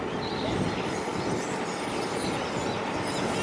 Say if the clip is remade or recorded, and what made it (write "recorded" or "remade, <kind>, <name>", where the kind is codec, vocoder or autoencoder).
recorded